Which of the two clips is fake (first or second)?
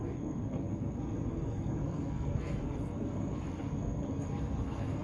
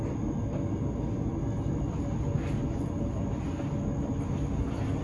first